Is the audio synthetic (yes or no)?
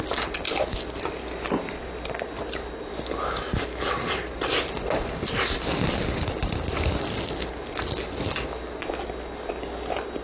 no